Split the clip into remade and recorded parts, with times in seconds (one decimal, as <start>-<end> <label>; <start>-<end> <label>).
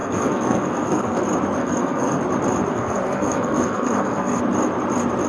0.0-1.2 remade; 1.2-1.6 recorded; 1.6-2.2 remade; 2.2-2.7 recorded; 2.7-4.4 remade; 4.4-5.3 recorded